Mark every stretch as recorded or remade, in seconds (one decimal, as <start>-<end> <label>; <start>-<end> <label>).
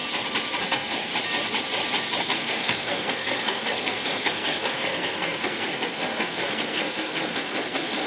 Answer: 0.0-0.6 recorded; 0.6-1.1 remade; 1.1-2.2 recorded; 2.2-8.1 remade